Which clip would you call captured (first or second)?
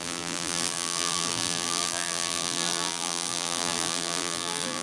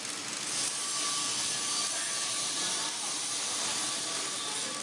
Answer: second